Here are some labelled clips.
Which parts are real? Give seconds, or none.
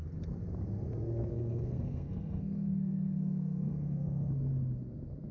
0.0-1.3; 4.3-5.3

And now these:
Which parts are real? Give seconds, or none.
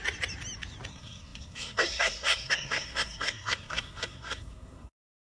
0.0-0.9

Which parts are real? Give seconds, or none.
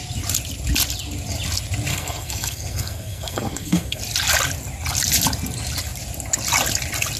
0.0-1.9; 4.0-7.2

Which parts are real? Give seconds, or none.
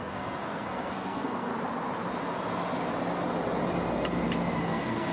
1.5-4.6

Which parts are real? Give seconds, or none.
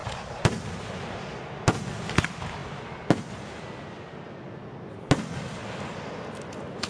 0.0-6.9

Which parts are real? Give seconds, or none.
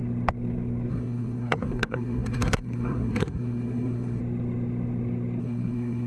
0.0-0.9; 4.2-5.4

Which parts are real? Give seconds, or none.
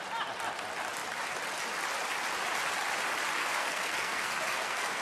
0.0-3.4